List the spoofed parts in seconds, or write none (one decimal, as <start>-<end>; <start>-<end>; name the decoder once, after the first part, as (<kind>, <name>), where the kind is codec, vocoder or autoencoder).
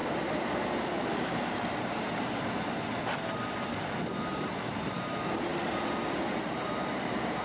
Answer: 0.0-3.0 (vocoder, BigVGAN v2); 4.1-5.5; 6.3-7.4